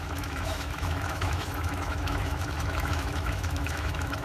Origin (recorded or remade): remade